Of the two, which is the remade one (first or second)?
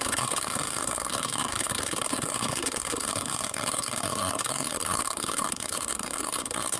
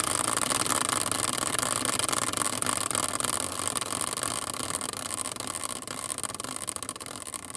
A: first